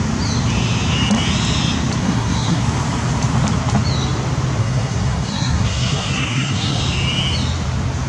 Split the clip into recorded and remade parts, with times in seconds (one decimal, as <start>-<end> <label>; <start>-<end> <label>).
0.0-2.0 recorded; 2.0-2.6 remade; 2.6-4.6 recorded; 4.6-6.8 remade; 6.8-8.1 recorded